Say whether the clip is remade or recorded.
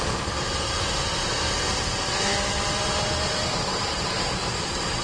remade